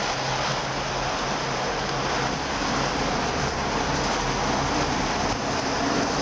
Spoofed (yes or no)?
no